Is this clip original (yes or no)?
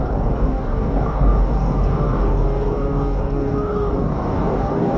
no